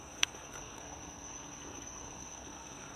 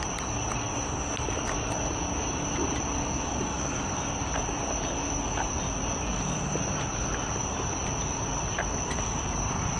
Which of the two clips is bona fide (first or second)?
second